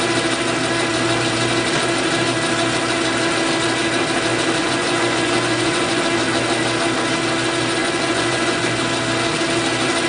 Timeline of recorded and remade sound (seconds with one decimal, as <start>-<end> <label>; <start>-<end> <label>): 0.0-4.6 recorded; 4.6-6.0 remade; 6.0-7.8 recorded; 7.8-8.8 remade; 8.8-10.1 recorded